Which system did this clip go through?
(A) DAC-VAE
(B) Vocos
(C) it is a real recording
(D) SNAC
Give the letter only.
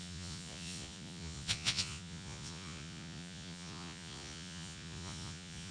B